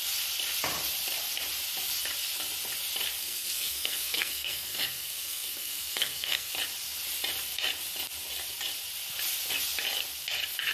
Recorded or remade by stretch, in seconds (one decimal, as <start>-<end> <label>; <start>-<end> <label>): 0.0-3.2 recorded; 3.2-6.5 remade; 6.5-10.7 recorded